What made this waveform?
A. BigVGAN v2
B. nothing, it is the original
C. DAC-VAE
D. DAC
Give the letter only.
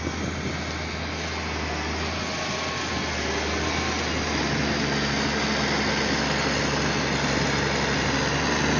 B